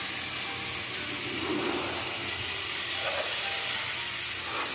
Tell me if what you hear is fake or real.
real